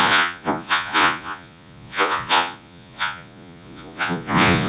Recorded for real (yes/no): no